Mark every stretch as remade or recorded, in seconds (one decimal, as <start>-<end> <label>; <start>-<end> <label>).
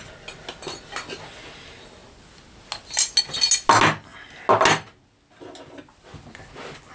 0.0-6.9 recorded